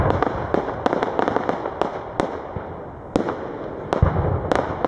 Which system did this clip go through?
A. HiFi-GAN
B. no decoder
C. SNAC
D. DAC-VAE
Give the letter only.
B